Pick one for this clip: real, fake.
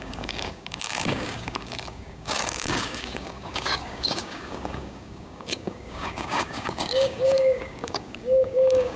fake